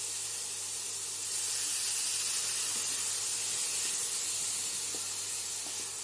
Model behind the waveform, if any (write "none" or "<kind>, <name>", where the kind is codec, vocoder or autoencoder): none